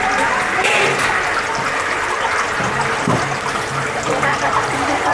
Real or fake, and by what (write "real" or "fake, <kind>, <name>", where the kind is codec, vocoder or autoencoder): real